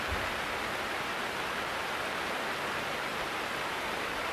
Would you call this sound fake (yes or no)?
no